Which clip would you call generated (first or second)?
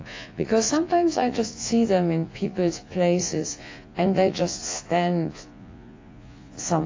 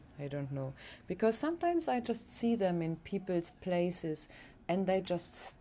first